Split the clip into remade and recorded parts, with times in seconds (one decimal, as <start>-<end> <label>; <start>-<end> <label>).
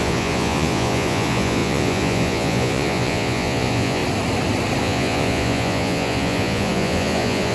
0.0-4.0 remade; 4.0-4.8 recorded; 4.8-7.5 remade